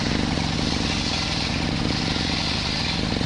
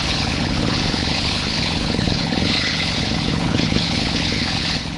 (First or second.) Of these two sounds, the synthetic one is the second